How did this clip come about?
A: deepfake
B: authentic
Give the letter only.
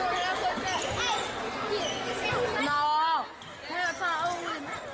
B